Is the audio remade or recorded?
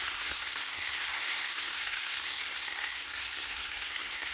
remade